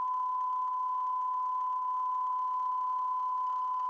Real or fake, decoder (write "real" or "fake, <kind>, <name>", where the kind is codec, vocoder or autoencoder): real